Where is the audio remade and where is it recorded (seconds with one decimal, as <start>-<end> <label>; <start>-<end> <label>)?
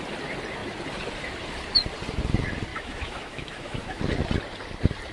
0.0-2.7 recorded; 2.7-4.0 remade; 4.0-5.1 recorded